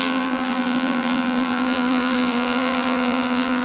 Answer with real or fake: fake